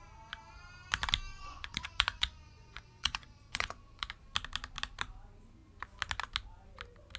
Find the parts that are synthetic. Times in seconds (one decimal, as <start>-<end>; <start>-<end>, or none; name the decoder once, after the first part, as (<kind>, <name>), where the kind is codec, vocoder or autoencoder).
1.3-4.1 (vocoder, Vocos)